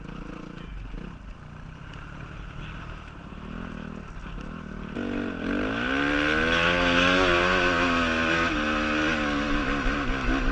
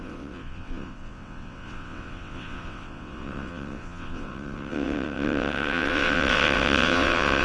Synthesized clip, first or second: second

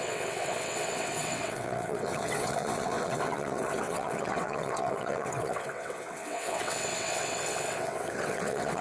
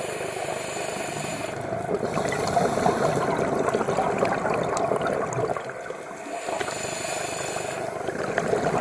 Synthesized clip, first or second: first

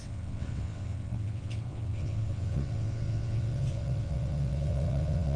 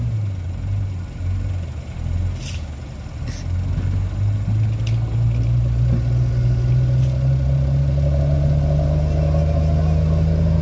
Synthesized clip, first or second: first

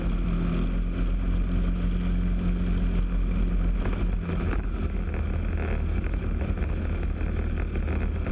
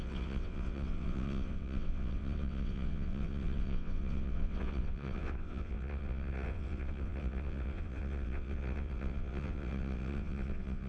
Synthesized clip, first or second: second